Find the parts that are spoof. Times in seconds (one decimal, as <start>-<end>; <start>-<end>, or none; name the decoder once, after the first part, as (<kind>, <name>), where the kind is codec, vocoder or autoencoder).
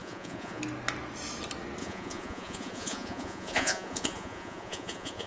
0.0-0.6 (vocoder, Vocos); 1.8-5.3